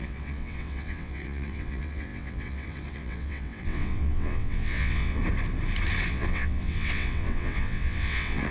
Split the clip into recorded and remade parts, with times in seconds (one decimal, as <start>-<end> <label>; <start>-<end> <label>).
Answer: 0.0-5.2 remade; 5.2-6.1 recorded; 6.1-8.5 remade